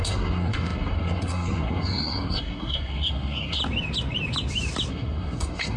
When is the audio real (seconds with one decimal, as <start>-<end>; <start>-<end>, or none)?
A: 3.6-4.9